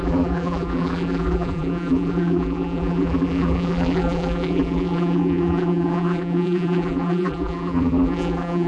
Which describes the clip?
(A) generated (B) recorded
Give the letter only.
A